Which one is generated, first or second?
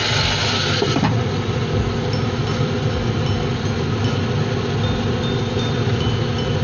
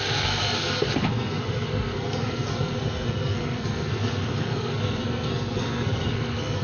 second